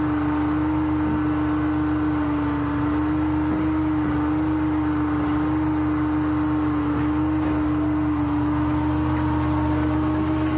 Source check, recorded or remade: recorded